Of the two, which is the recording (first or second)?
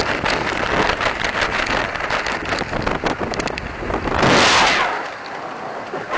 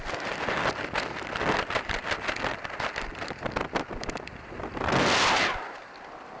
first